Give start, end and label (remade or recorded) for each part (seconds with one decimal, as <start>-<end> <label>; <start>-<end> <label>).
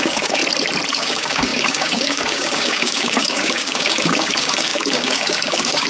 0.0-0.4 remade; 0.4-0.9 recorded; 0.9-5.9 remade